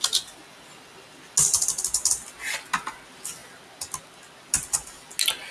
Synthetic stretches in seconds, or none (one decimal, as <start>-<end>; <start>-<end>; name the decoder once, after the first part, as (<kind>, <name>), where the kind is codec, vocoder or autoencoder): none